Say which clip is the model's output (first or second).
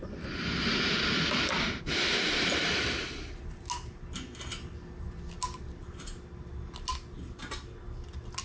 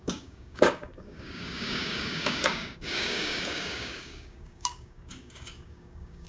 second